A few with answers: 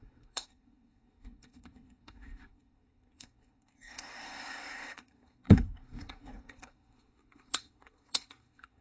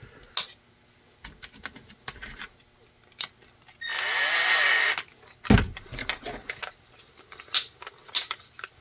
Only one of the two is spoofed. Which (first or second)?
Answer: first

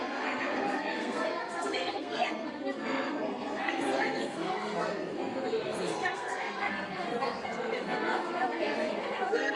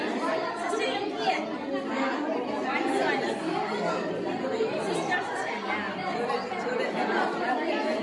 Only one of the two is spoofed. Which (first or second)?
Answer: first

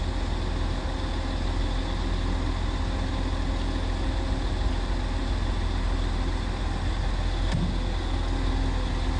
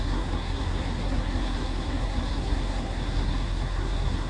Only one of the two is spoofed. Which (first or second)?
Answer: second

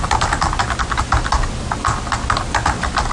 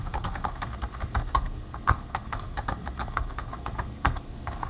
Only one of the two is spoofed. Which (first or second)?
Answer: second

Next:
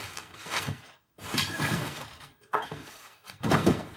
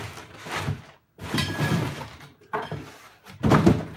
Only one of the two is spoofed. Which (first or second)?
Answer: first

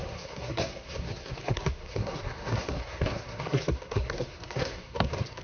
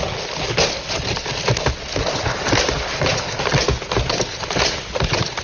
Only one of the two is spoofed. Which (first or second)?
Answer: first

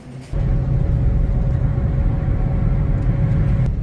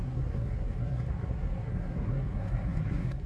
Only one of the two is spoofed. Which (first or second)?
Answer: second